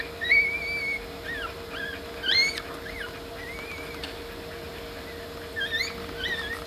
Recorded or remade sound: recorded